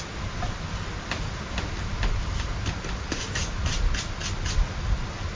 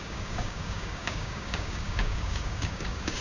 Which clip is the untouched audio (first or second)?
first